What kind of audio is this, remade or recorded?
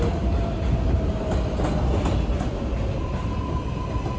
recorded